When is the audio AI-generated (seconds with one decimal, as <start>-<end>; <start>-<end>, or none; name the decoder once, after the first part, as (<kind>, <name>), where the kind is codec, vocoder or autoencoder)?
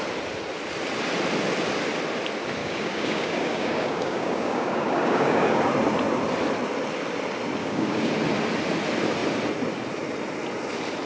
2.6-5.6 (codec, DAC); 7.6-8.1